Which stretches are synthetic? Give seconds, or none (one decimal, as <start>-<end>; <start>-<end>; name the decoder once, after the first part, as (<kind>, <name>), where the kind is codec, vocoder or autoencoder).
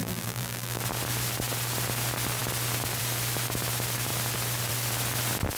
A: 0.0-0.8 (vocoder, BigVGAN v2)